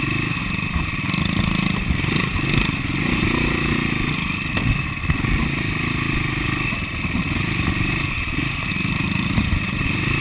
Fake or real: real